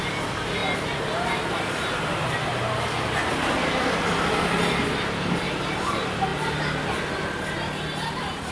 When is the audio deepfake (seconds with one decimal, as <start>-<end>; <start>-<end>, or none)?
none